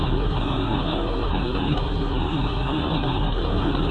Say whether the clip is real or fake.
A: fake